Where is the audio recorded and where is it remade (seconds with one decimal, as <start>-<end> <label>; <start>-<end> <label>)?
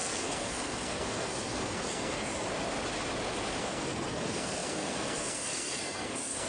0.0-2.3 remade; 2.3-3.6 recorded; 3.6-6.5 remade